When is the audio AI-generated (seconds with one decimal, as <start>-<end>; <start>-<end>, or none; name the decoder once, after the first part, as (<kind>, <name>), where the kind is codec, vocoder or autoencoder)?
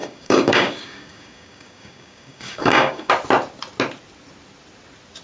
0.0-3.1 (codec, DAC)